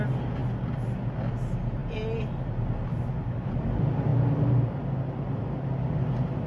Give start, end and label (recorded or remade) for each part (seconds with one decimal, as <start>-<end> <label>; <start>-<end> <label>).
0.0-6.5 recorded